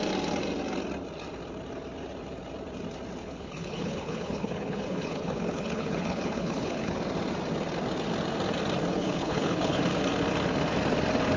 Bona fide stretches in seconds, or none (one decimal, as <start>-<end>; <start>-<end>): 0.0-3.2; 7.0-8.9; 9.8-11.4